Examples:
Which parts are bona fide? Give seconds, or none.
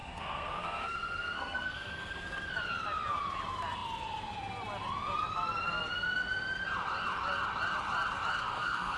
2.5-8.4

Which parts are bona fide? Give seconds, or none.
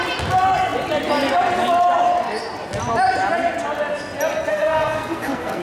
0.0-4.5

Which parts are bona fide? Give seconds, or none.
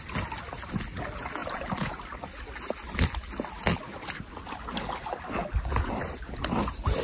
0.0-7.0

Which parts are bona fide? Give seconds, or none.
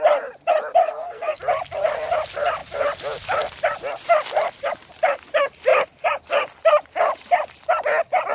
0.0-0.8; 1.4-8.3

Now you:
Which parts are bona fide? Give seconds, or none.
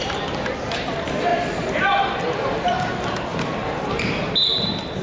0.0-5.0